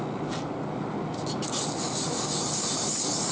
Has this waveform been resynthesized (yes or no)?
no